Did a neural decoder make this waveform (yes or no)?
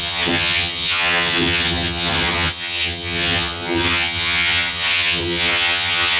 yes